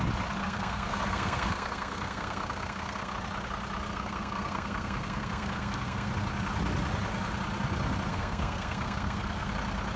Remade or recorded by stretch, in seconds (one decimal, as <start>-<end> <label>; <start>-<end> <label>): 0.0-0.4 recorded; 0.4-3.1 remade; 3.1-3.9 recorded; 3.9-6.1 remade; 6.1-8.1 recorded; 8.1-9.5 remade; 9.5-10.0 recorded